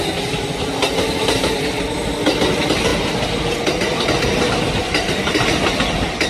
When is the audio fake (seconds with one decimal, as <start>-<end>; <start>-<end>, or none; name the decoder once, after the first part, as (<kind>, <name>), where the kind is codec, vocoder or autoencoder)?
none